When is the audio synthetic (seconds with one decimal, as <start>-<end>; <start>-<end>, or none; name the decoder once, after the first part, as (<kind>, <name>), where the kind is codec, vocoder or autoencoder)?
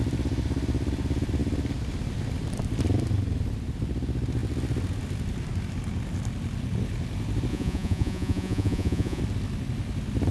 7.5-9.2 (vocoder, Vocos)